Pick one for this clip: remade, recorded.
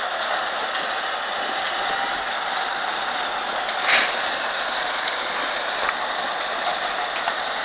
recorded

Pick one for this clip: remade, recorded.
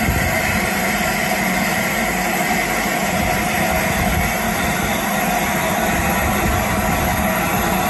recorded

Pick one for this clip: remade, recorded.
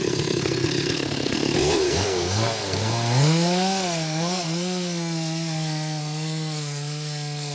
remade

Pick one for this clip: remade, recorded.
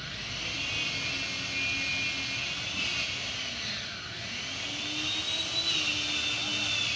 recorded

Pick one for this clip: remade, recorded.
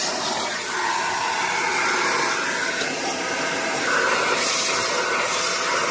recorded